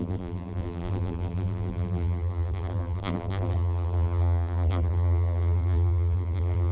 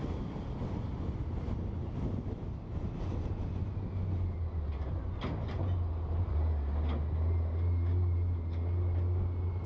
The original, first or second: second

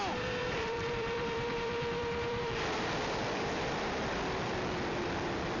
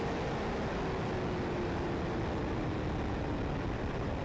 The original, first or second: second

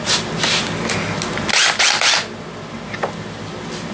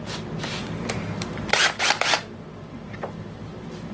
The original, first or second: first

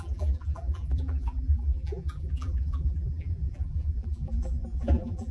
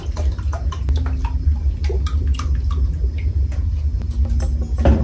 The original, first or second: second